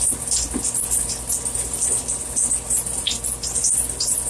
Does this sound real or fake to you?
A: real